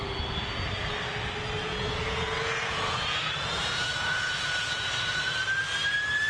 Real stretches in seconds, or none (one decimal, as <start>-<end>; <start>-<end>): 0.0-1.6; 5.4-6.3